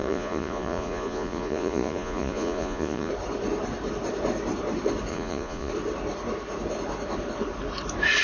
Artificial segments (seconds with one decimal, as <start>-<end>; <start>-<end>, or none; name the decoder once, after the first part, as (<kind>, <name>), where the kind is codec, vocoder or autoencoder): 0.0-3.1 (vocoder, Vocos); 5.1-5.7